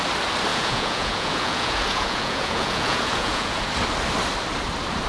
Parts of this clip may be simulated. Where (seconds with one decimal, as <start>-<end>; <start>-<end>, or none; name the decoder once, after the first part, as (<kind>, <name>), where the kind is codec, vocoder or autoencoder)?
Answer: 0.5-3.6 (vocoder, Vocos)